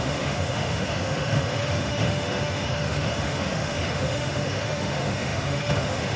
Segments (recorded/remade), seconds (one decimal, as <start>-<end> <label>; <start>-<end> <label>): 0.0-6.2 remade